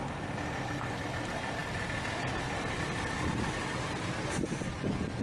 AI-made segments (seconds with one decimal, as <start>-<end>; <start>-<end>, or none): none